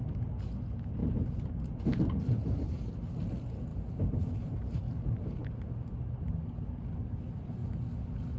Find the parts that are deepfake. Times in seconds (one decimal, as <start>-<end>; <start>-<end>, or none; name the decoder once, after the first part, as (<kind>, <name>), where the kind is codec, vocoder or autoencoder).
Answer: 1.0-2.9 (vocoder, BigVGAN v2); 3.7-4.8; 5.4-6.3